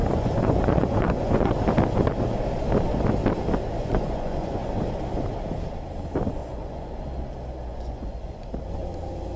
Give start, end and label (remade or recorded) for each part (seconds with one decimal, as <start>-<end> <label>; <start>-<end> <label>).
0.0-1.5 remade; 1.5-3.8 recorded; 3.8-4.7 remade; 4.7-6.4 recorded; 6.4-7.0 remade; 7.0-7.7 recorded; 7.7-8.5 remade; 8.5-9.4 recorded